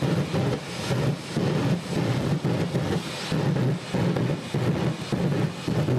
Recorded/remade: recorded